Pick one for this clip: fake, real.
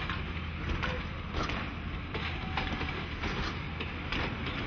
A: real